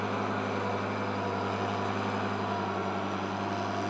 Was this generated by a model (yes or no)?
no